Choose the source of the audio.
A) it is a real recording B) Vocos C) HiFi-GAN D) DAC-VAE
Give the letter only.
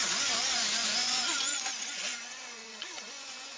B